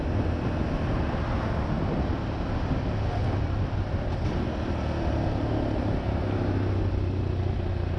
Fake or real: real